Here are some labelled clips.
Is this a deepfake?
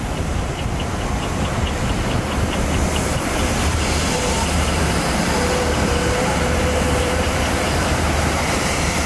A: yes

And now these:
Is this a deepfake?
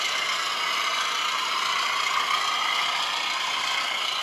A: yes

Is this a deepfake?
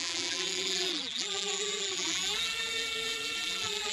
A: yes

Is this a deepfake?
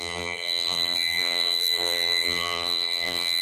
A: yes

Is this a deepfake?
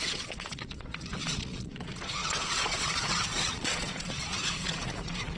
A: yes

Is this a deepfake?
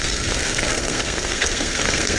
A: yes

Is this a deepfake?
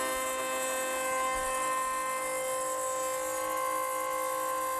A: no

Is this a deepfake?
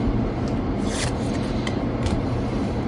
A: yes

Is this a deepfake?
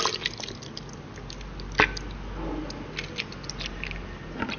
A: no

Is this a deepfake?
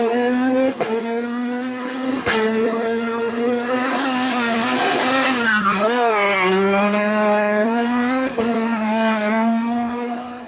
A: yes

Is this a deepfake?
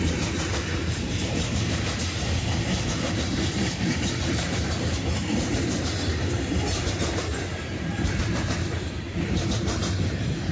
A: yes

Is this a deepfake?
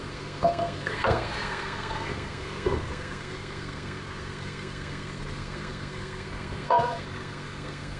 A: yes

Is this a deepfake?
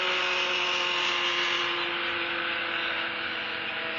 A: no